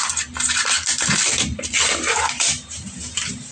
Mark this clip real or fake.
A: fake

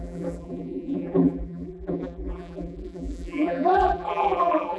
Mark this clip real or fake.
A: fake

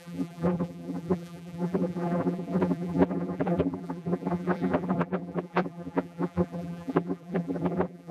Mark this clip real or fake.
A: fake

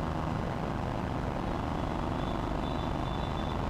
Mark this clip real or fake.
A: real